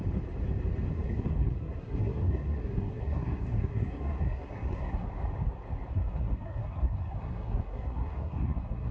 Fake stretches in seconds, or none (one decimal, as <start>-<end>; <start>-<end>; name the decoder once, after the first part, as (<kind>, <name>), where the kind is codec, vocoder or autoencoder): 0.9-5.1 (codec, SNAC); 5.9-8.9